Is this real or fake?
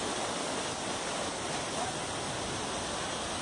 real